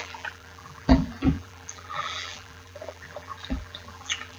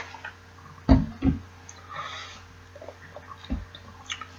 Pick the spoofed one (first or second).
first